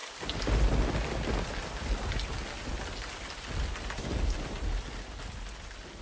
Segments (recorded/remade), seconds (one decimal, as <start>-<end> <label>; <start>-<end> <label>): 0.0-6.0 recorded